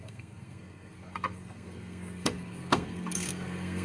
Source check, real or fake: fake